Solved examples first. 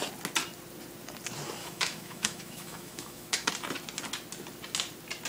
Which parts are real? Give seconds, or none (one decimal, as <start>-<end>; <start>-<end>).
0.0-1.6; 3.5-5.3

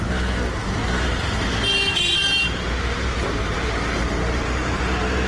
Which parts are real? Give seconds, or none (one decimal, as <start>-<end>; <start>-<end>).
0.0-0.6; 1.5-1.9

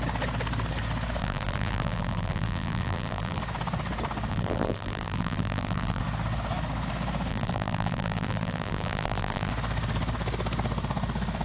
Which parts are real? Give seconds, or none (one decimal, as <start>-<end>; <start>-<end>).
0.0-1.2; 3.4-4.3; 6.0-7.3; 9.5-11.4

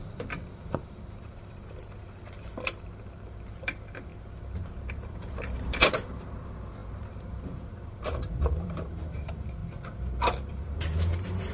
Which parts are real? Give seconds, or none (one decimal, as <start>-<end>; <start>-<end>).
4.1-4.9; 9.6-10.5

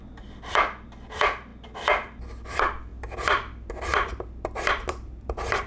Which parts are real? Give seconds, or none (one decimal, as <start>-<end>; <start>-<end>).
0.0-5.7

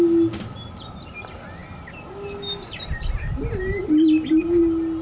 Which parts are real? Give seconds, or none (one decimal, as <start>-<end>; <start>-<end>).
0.0-5.0